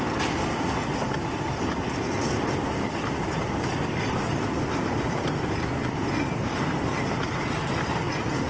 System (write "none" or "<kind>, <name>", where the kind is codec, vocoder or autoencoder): none